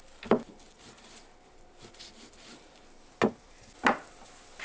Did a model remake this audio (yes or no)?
no